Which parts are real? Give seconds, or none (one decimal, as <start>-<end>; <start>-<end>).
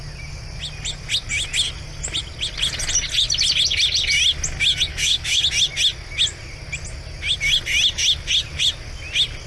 0.0-4.9; 5.4-9.5